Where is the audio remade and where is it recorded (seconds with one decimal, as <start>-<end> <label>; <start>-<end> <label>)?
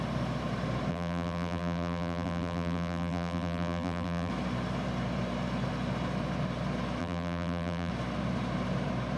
0.0-0.9 recorded; 0.9-4.3 remade; 4.3-7.0 recorded; 7.0-7.9 remade; 7.9-9.2 recorded